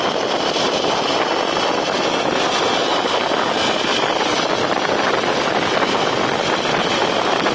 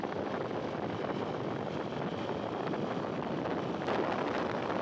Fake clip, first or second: first